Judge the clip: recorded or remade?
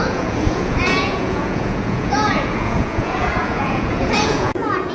remade